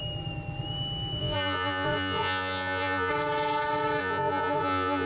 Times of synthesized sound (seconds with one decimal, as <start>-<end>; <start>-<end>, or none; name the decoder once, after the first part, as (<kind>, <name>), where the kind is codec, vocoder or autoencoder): 1.2-3.1 (vocoder, Vocos); 4.0-5.1